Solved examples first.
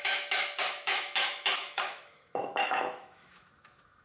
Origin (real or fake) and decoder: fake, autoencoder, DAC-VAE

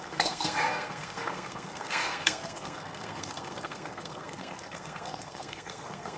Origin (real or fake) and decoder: fake, codec, SNAC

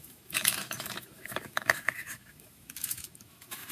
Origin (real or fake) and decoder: fake, autoencoder, DAC-VAE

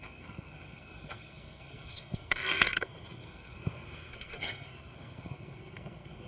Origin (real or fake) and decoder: fake, codec, SNAC